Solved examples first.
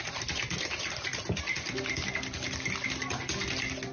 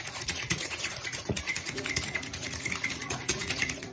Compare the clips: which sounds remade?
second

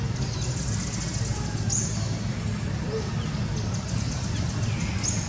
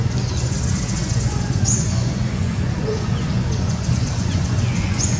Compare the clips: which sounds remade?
second